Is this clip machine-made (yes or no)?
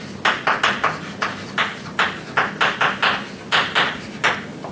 no